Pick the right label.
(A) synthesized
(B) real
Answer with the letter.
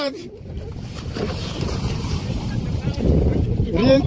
A